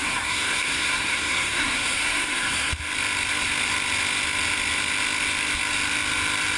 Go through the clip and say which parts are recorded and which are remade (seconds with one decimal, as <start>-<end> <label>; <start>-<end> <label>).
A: 0.0-2.7 remade; 2.7-6.6 recorded